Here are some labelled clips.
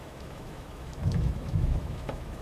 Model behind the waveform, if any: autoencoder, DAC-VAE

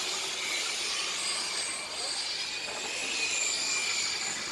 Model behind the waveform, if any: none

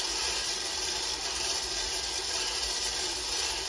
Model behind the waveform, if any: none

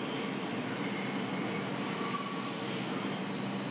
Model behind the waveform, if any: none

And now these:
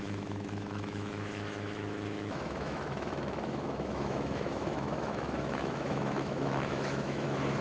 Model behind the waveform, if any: autoencoder, DAC-VAE